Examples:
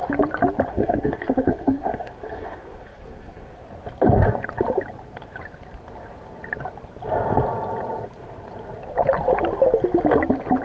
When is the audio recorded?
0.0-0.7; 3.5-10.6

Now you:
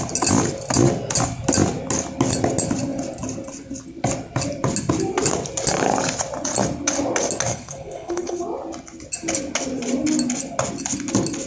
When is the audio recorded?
0.0-7.5; 8.4-11.5